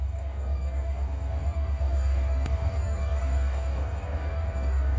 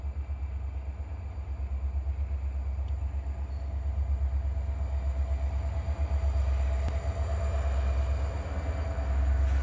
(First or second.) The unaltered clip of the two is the second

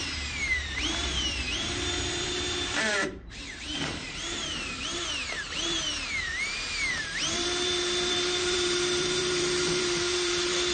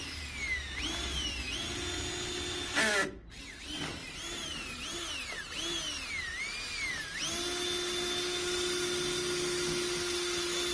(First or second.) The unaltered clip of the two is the second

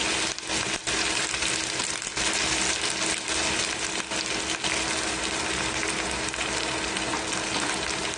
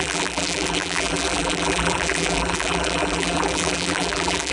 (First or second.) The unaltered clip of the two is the first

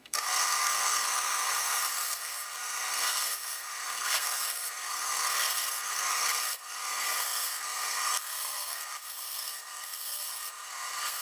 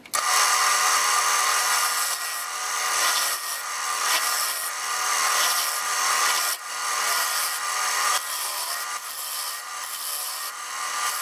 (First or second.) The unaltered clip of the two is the second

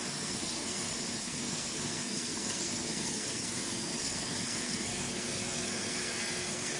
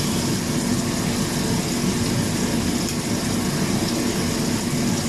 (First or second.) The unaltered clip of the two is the second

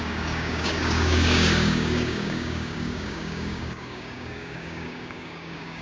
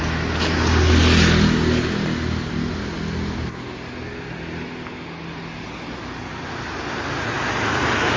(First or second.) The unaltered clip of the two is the second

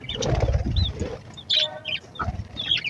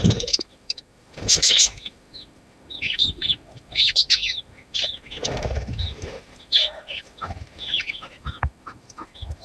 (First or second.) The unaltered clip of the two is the first